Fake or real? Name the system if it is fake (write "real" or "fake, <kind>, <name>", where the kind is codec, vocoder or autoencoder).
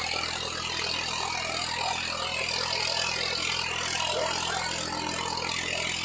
real